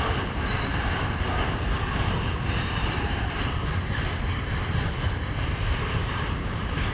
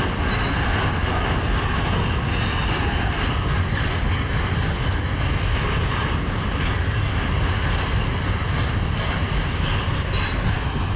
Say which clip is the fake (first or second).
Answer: first